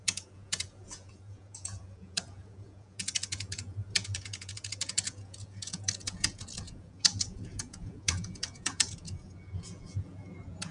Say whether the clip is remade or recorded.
remade